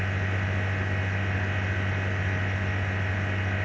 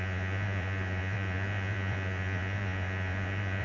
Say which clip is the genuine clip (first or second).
first